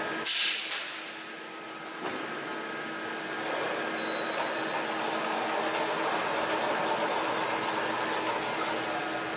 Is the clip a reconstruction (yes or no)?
no